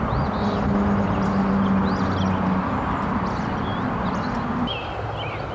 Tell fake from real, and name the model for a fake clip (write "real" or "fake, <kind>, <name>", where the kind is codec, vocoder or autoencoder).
real